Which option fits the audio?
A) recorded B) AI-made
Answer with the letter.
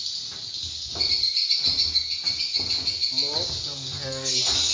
A